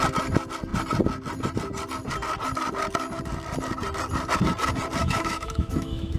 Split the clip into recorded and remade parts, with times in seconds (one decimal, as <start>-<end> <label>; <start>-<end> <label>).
0.0-5.0 recorded; 5.0-6.2 remade